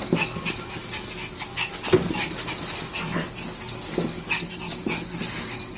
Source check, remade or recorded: recorded